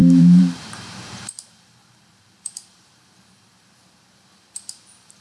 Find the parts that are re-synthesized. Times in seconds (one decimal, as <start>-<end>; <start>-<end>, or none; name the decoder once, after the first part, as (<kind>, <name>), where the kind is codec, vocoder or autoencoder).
0.0-5.2 (vocoder, BigVGAN v2)